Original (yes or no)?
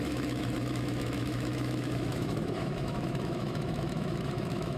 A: no